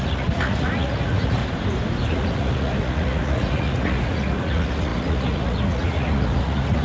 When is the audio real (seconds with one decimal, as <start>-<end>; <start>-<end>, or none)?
1.4-2.1